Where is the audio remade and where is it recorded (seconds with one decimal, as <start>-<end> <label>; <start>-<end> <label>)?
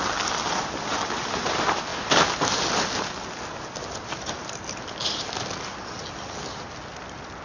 0.0-7.4 recorded